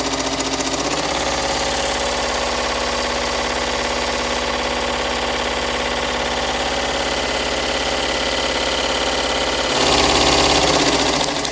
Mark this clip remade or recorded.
recorded